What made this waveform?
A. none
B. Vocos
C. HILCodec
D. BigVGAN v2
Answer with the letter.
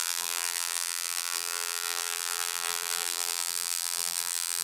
D